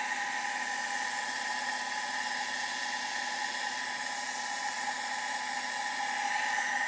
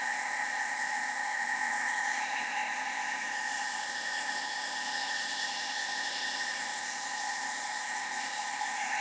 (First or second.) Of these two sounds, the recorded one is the first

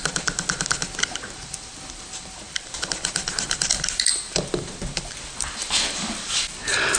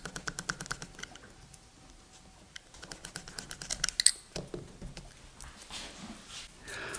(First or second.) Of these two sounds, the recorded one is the second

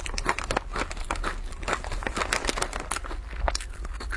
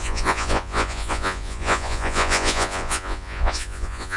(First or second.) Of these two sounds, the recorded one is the first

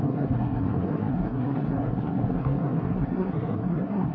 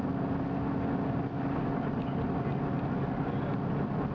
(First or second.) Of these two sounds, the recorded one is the second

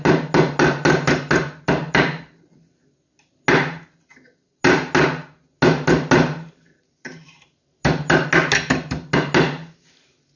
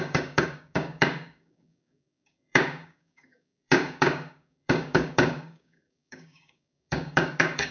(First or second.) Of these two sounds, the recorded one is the first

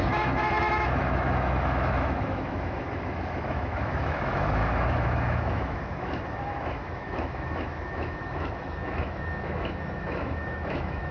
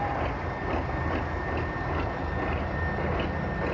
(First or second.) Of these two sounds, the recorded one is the second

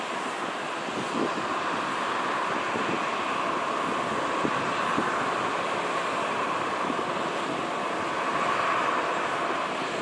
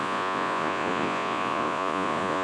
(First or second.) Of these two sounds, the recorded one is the first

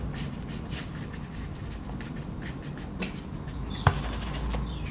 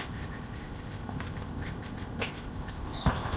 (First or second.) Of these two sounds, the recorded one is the first